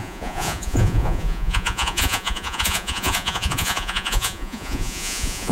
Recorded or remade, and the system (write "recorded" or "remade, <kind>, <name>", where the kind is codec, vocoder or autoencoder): remade, vocoder, Vocos